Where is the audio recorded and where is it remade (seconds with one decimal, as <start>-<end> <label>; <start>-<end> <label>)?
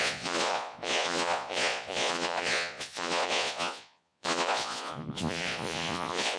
0.0-6.4 remade